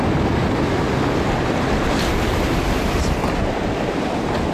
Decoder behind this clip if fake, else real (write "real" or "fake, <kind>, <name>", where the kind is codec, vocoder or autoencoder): real